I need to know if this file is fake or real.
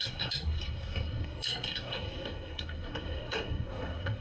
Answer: fake